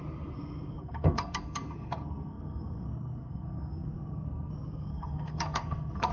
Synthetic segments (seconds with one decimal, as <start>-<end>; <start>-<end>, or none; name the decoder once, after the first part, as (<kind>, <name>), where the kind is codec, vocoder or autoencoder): 0.8-4.5 (codec, SNAC); 4.9-6.1